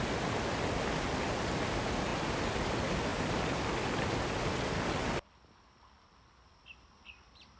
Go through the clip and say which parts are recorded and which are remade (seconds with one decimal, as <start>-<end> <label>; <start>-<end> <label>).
0.0-7.6 recorded